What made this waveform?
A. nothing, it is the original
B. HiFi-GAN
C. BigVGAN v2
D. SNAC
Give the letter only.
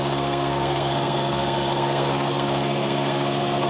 D